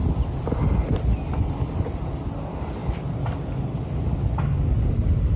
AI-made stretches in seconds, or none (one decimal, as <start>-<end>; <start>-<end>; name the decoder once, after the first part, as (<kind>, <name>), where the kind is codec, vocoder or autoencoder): none